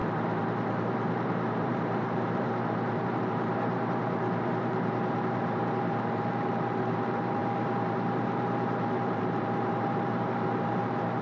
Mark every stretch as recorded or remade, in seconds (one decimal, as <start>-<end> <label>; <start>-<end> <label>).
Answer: 0.0-11.2 remade